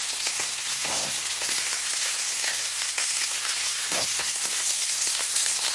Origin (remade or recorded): remade